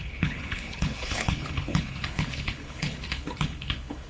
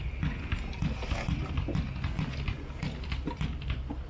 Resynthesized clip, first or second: first